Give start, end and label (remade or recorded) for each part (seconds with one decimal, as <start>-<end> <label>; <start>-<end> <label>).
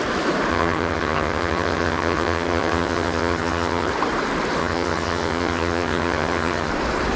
0.0-0.5 recorded; 0.5-3.9 remade; 3.9-4.6 recorded; 4.6-6.7 remade; 6.7-7.2 recorded